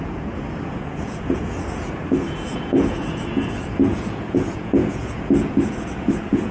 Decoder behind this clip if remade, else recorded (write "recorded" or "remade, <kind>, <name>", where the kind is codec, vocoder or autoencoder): remade, vocoder, Vocos